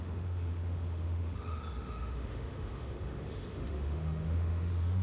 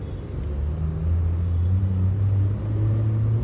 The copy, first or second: first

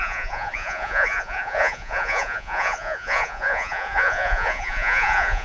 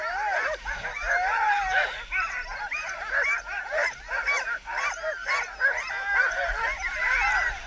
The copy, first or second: first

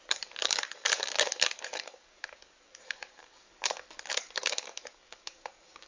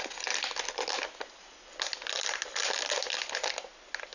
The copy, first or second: first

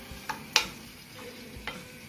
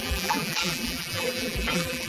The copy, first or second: second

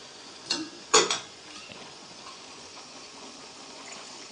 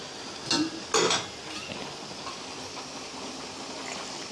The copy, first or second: first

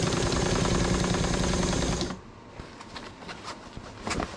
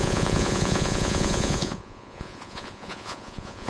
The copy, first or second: second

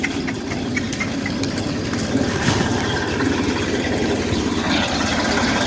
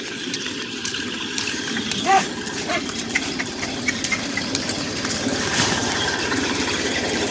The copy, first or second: second